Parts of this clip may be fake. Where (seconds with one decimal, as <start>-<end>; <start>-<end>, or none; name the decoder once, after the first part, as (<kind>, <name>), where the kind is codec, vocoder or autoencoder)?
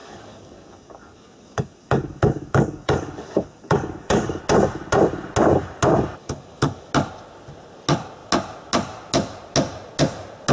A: 0.0-4.4 (codec, DAC); 6.2-6.9